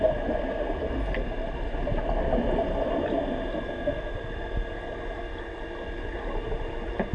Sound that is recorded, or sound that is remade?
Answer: recorded